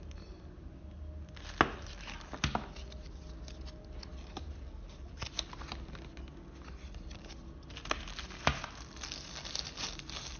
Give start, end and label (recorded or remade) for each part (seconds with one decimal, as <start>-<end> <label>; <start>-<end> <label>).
0.0-10.4 recorded